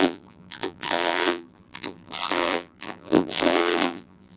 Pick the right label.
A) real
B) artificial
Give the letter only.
B